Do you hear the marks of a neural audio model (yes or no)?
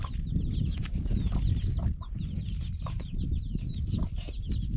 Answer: no